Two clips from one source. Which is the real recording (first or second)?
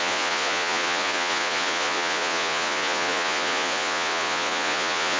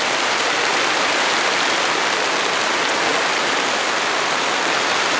second